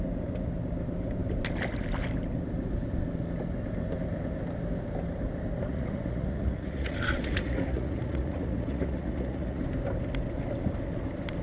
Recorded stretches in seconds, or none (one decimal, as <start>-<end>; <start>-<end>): 0.0-5.7; 9.6-11.4